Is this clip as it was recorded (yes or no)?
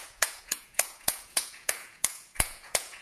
no